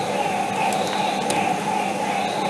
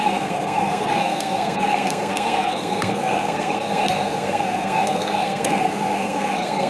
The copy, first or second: second